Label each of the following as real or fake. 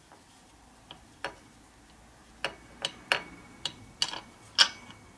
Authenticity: real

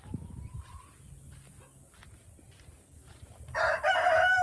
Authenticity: real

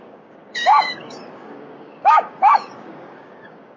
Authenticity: fake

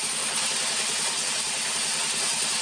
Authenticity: real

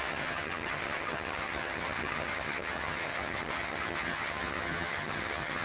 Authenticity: fake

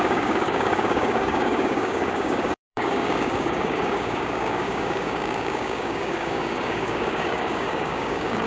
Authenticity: fake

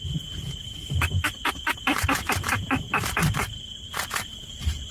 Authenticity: fake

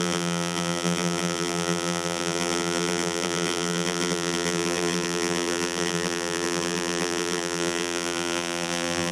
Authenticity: fake